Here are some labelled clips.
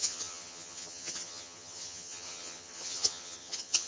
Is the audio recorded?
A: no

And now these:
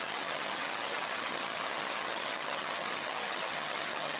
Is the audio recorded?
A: no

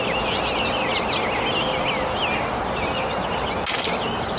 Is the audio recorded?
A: yes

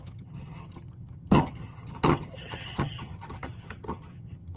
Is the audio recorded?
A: no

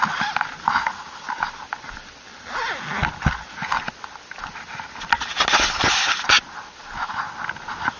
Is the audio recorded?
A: yes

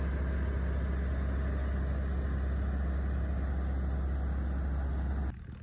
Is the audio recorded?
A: yes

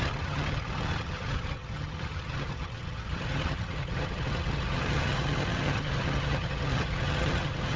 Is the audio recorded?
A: no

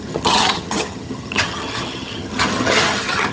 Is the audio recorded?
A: no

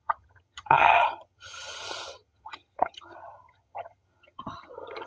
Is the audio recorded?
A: no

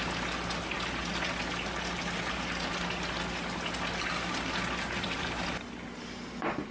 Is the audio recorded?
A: yes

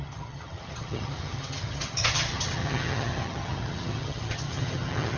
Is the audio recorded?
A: no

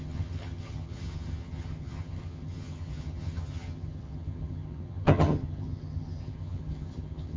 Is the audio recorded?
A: no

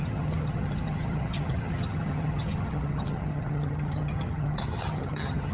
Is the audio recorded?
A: no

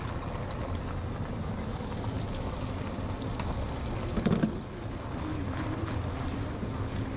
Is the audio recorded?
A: yes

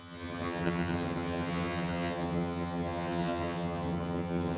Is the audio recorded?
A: no